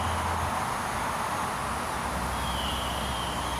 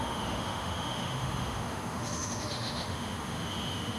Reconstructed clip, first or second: second